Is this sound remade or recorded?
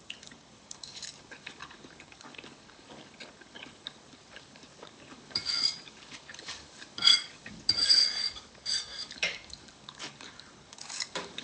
remade